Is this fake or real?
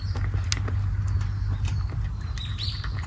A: real